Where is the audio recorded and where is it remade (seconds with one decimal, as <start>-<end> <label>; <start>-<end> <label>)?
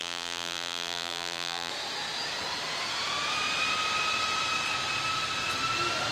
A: 0.0-1.7 remade; 1.7-6.1 recorded